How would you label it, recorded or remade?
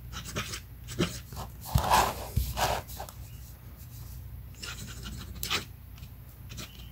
recorded